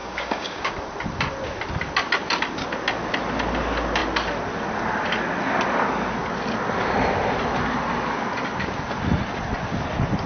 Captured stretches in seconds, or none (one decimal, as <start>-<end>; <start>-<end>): 0.7-10.3